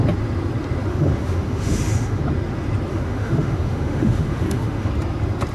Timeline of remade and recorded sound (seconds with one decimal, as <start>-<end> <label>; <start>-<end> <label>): 0.0-0.9 recorded; 0.9-2.2 remade; 2.2-2.9 recorded; 2.9-4.9 remade; 4.9-5.5 recorded